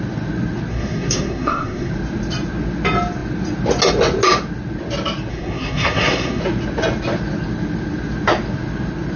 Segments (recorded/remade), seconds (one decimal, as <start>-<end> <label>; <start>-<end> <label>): 0.0-0.7 recorded; 0.7-1.9 remade; 1.9-5.3 recorded; 5.3-6.4 remade; 6.4-9.2 recorded